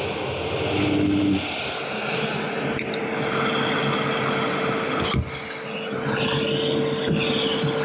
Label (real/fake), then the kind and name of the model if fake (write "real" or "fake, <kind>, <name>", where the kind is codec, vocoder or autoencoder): real